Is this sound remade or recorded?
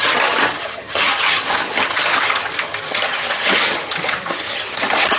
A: remade